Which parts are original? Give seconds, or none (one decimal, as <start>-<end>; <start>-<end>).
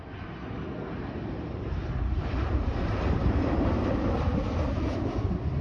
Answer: 0.0-1.2; 4.2-5.6